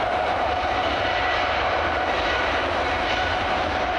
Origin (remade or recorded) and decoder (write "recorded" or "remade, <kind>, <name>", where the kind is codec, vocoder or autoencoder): remade, vocoder, BigVGAN v2